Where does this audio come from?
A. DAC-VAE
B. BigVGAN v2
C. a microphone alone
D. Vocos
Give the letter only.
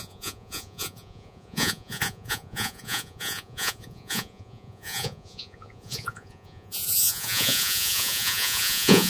D